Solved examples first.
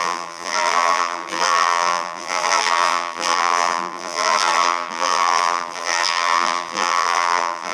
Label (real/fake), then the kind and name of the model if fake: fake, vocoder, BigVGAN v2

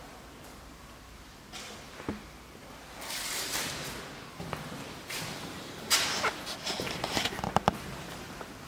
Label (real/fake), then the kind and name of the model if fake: fake, vocoder, BigVGAN v2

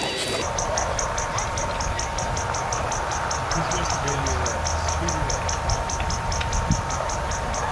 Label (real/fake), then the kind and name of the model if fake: real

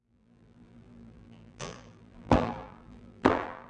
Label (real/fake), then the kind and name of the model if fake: fake, vocoder, BigVGAN v2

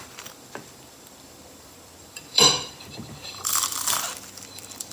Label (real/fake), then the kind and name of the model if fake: fake, vocoder, BigVGAN v2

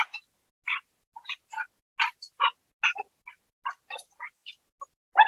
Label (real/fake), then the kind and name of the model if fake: real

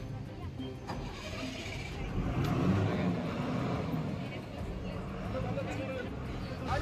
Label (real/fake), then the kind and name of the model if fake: real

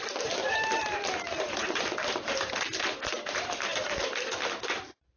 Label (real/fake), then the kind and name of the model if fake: fake, vocoder, BigVGAN v2